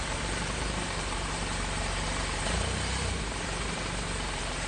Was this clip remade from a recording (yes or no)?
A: yes